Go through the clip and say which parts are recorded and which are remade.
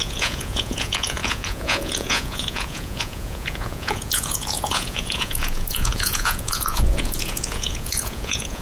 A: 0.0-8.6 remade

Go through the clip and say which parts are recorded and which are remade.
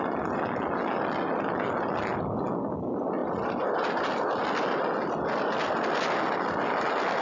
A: 0.0-7.2 recorded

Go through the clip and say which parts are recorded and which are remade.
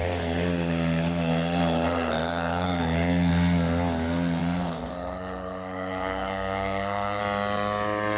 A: 0.0-3.3 remade; 3.3-4.4 recorded; 4.4-7.2 remade; 7.2-8.2 recorded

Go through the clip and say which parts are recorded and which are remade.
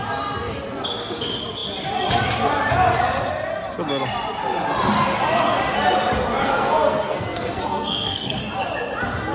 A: 0.0-6.4 recorded; 6.4-8.4 remade; 8.4-9.3 recorded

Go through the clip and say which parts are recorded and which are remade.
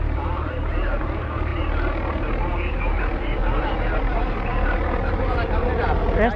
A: 0.0-1.5 remade; 1.5-3.0 recorded; 3.0-4.5 remade; 4.5-5.2 recorded; 5.2-6.4 remade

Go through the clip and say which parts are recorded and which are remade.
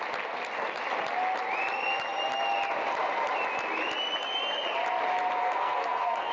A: 0.0-5.4 recorded; 5.4-6.3 remade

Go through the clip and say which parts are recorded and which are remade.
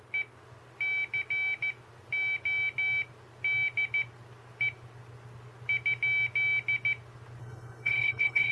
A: 0.0-7.4 recorded; 7.4-8.5 remade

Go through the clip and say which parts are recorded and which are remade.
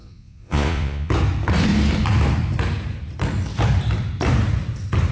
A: 0.0-1.1 remade; 1.1-5.1 recorded